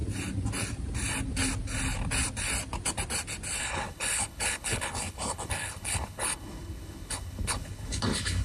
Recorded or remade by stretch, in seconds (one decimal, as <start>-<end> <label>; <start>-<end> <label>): 0.0-3.6 recorded; 3.6-8.4 remade